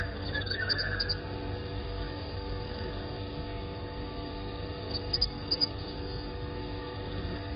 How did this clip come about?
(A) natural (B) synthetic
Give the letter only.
B